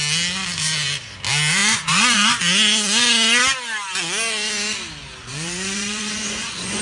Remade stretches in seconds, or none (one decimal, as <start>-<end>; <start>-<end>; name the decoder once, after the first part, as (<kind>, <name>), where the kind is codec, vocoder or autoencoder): 1.6-2.4 (vocoder, Vocos); 5.2-6.8